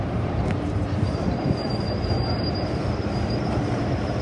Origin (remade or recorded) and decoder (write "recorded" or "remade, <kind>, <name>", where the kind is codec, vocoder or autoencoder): remade, vocoder, BigVGAN v2